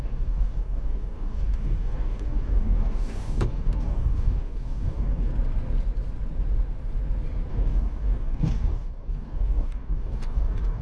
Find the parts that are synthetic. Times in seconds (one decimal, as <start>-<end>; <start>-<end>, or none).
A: 0.0-5.3; 7.5-10.8